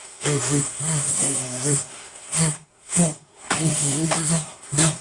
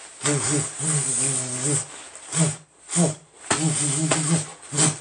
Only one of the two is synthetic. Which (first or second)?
first